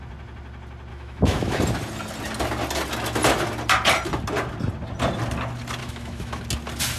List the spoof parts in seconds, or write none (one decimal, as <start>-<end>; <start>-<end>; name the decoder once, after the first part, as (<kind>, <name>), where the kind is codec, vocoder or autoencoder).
0.9-1.6 (autoencoder, DAC-VAE); 5.8-6.4